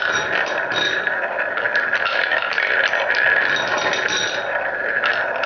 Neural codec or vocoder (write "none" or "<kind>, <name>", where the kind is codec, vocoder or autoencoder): none